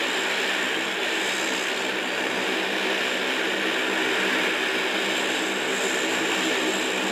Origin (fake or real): real